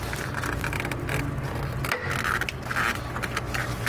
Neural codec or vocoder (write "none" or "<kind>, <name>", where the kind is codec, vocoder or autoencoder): none